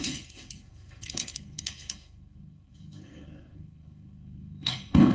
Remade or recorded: remade